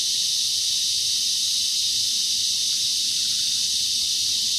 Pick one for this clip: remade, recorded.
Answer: recorded